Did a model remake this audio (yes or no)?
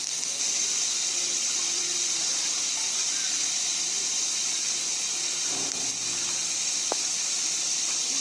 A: no